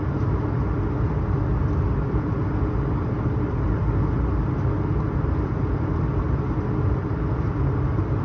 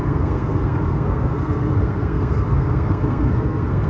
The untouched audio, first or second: first